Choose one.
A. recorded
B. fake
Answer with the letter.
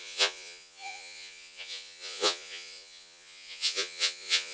B